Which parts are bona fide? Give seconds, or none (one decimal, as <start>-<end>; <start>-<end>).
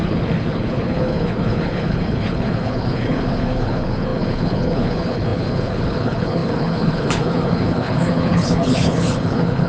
none